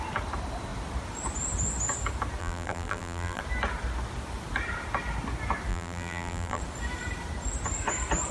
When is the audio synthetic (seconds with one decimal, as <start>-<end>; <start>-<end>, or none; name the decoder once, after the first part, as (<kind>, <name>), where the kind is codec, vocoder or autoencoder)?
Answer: 2.4-3.4 (vocoder, BigVGAN v2); 5.7-6.6